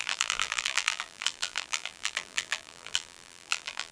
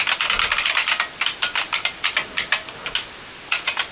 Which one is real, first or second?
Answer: second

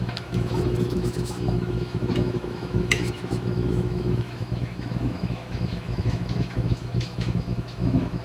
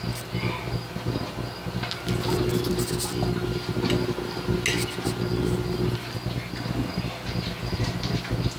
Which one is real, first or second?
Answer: second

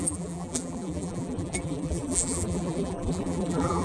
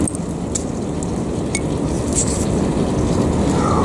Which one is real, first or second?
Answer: second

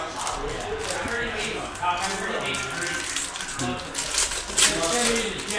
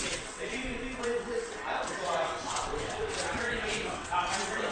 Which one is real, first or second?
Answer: first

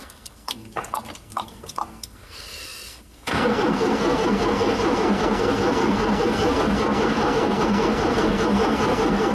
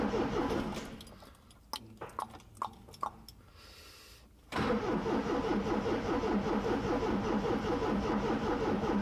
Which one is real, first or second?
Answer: second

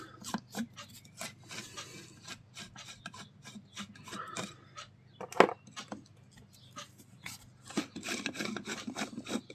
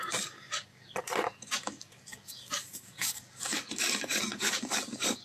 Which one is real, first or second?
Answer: first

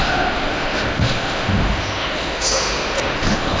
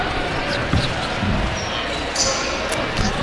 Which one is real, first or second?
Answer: second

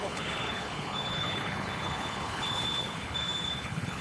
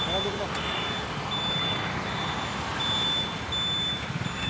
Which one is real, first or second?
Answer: second